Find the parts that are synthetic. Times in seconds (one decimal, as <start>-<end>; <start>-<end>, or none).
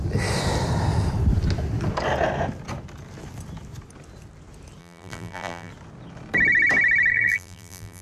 4.8-5.7; 7.1-8.0